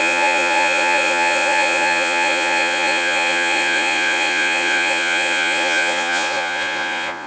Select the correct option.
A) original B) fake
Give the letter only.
B